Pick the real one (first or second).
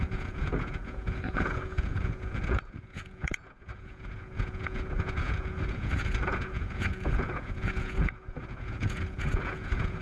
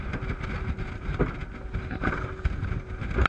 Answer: second